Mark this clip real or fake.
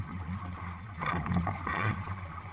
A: fake